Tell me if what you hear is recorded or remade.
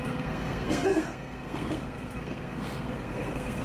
remade